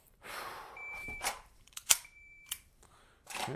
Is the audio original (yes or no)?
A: no